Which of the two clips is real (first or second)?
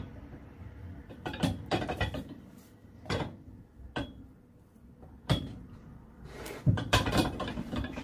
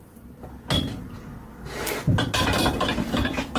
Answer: second